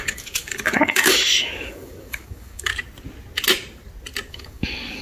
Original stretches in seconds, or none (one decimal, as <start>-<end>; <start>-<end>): 2.7-4.3